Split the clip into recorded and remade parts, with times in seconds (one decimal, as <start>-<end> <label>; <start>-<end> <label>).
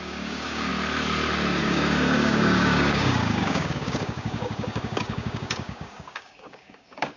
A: 0.0-0.7 remade; 0.7-1.6 recorded; 1.6-7.2 remade